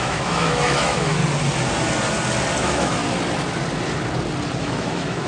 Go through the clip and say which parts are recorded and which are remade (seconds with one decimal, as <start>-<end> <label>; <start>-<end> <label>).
0.0-1.2 remade; 1.2-2.6 recorded; 2.6-3.0 remade; 3.0-4.6 recorded; 4.6-5.3 remade

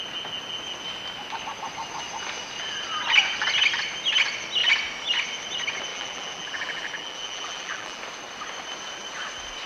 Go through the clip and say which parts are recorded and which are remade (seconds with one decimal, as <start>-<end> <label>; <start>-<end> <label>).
0.0-5.9 recorded; 5.9-8.0 remade; 8.0-9.7 recorded

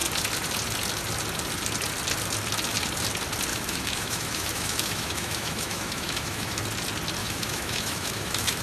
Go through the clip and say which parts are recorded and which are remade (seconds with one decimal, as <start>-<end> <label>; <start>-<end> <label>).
0.0-3.5 recorded; 3.5-6.6 remade; 6.6-7.2 recorded; 7.2-8.6 remade

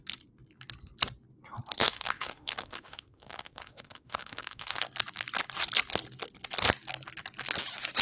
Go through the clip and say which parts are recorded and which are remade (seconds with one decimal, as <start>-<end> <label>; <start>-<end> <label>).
0.0-1.8 recorded; 1.8-4.8 remade; 4.8-8.0 recorded